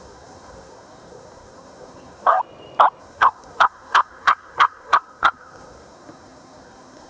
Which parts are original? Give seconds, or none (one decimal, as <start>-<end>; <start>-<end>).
2.4-3.0